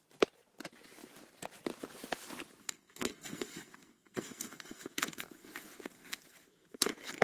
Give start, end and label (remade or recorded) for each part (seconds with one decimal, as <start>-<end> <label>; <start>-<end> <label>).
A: 0.0-2.6 recorded; 2.6-7.2 remade

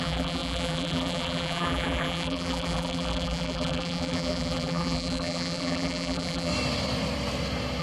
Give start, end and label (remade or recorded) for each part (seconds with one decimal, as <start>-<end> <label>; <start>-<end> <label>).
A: 0.0-6.5 remade; 6.5-7.8 recorded

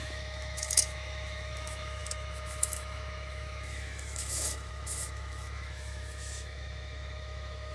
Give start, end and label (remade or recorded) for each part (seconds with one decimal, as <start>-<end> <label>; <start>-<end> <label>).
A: 0.0-7.7 remade

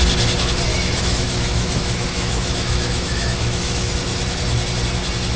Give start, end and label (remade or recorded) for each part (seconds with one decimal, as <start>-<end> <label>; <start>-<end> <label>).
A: 0.0-0.7 recorded; 0.7-3.9 remade; 3.9-5.4 recorded